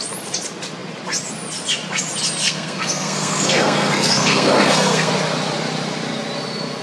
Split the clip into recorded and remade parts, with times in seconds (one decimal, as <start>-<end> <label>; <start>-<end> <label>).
0.0-2.4 recorded; 2.4-5.1 remade; 5.1-6.8 recorded